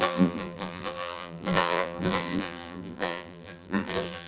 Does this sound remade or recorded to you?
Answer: remade